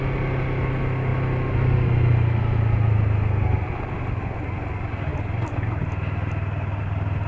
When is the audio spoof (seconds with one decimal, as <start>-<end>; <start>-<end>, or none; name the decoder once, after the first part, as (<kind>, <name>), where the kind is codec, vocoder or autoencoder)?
none